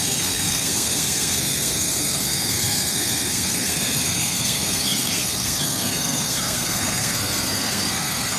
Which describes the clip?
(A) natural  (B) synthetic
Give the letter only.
B